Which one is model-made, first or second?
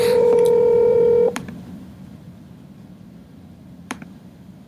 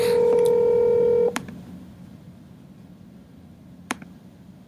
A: first